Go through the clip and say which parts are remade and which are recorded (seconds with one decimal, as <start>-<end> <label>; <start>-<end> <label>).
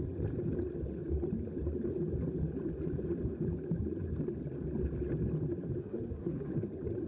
0.0-5.8 recorded; 5.8-6.5 remade; 6.5-7.1 recorded